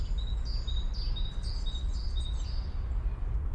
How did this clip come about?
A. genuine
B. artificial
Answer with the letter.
A